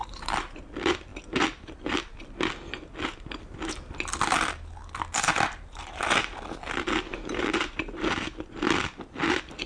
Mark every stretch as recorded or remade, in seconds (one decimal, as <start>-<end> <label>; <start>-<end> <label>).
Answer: 0.0-0.6 remade; 0.6-7.1 recorded; 7.1-8.0 remade; 8.0-9.7 recorded